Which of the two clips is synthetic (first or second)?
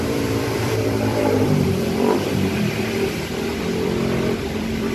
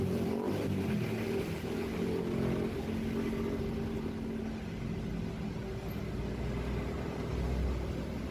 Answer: first